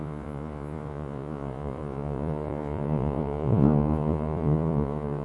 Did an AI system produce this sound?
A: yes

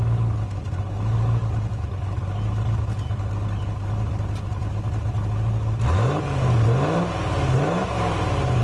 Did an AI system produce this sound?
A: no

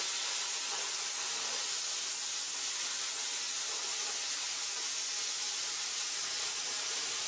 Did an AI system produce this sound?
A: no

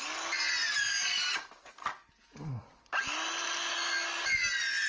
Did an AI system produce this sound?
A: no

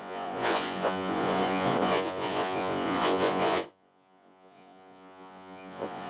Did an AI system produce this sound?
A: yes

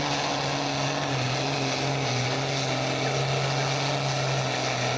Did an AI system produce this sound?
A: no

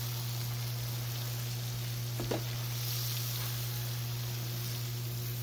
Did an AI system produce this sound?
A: no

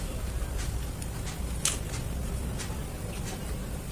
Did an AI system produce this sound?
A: no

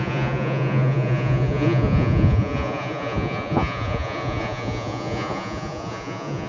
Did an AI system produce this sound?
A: yes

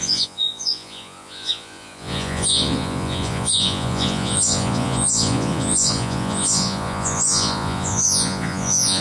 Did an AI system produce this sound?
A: yes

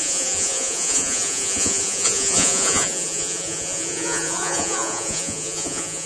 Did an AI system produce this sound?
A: yes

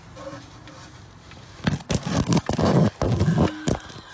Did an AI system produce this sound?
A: no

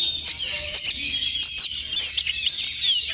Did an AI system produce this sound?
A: no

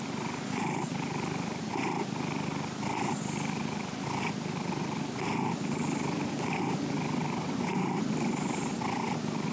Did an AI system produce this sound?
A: no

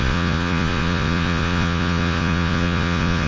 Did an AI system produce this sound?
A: yes